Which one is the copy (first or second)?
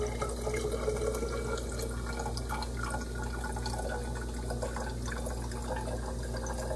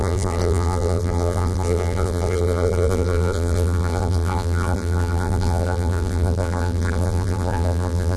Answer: second